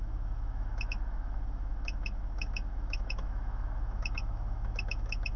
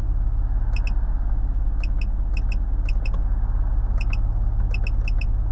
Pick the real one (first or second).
second